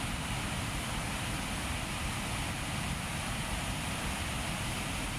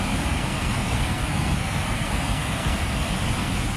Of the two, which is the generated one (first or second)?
second